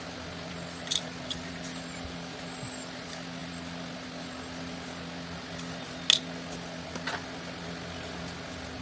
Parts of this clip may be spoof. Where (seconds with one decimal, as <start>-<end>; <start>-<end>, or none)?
none

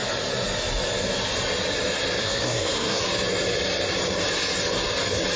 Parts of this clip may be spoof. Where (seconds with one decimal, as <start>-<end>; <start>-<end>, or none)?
2.2-3.0

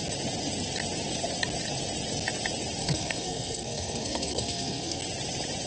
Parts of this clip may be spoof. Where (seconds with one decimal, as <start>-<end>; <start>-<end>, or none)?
2.8-5.0

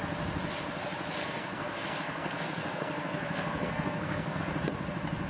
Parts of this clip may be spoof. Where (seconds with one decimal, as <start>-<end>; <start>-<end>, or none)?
1.2-4.4

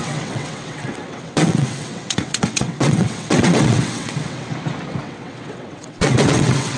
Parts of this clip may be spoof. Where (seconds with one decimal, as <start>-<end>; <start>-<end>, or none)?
0.0-4.5; 5.0-6.8

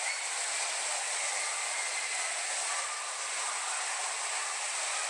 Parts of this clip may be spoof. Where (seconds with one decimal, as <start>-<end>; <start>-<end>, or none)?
none

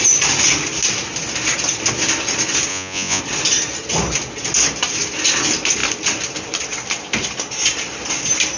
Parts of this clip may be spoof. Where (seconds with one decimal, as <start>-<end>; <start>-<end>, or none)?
2.7-3.2

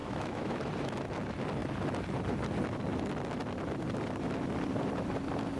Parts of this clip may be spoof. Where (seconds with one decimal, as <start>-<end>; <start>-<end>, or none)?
0.0-0.6